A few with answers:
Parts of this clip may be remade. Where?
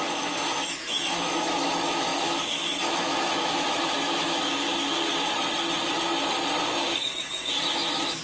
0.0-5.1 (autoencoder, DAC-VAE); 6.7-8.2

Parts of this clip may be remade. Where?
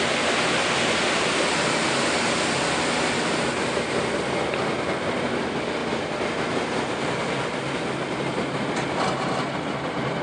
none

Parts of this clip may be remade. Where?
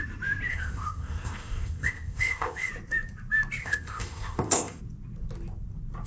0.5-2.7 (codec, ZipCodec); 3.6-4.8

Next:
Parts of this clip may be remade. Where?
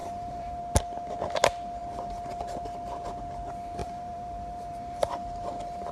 0.0-0.6 (vocoder, BigVGAN v2); 3.8-5.1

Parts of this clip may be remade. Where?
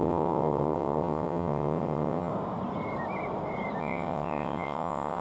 0.0-2.3 (vocoder, WaveNeXt); 3.8-5.2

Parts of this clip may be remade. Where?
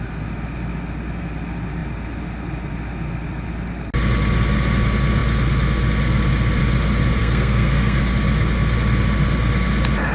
7.2-8.0 (codec, SNAC)